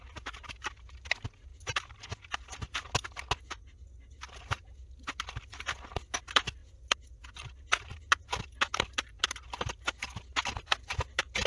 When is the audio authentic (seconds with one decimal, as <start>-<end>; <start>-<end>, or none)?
0.0-11.5